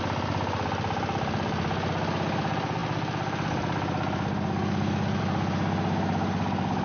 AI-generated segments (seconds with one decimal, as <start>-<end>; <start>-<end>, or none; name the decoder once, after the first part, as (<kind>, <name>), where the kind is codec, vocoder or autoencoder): none

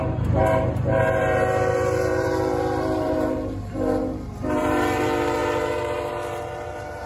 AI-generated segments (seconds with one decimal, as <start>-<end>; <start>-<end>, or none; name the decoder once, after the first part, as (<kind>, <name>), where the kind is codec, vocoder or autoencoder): 0.0-7.1 (vocoder, BigVGAN v2)

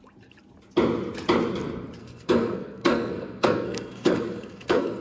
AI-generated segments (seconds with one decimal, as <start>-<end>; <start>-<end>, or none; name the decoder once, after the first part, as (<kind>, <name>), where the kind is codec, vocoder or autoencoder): 2.0-5.0 (codec, SNAC)